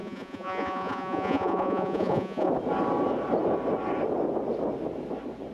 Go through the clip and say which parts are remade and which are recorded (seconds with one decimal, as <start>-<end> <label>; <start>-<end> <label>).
0.0-2.5 remade; 2.5-5.5 recorded